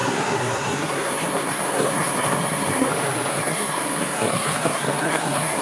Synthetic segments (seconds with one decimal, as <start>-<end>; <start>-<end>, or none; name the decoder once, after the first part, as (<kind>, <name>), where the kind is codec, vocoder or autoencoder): 0.0-2.9 (codec, SNAC); 3.3-5.6